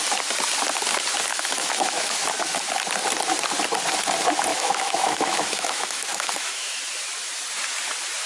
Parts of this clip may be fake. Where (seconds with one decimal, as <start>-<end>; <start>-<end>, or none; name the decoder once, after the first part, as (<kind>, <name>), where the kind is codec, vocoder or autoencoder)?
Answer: 1.3-2.2 (autoencoder, DAC-VAE); 4.5-6.8